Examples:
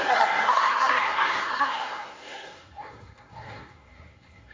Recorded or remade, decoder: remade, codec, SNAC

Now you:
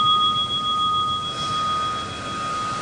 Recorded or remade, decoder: recorded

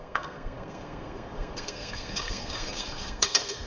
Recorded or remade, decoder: remade, codec, SNAC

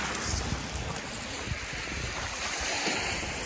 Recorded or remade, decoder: recorded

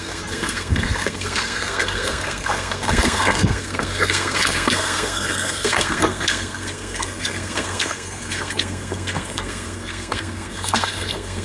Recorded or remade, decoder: remade, codec, SNAC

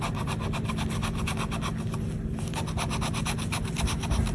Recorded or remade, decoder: recorded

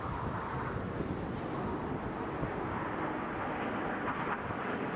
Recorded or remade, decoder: recorded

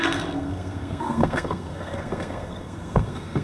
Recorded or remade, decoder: remade, codec, SNAC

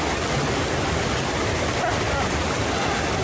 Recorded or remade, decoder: recorded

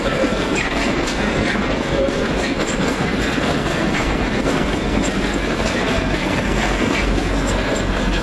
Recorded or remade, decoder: remade, codec, SNAC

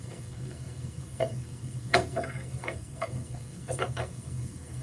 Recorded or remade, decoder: remade, codec, SNAC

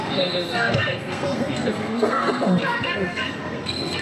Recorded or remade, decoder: remade, codec, SNAC